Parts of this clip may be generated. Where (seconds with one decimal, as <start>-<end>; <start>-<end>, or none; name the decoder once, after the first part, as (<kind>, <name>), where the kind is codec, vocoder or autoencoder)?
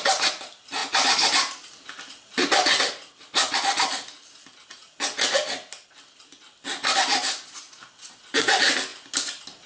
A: none